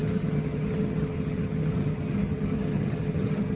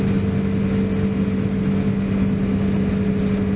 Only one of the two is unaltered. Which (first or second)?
second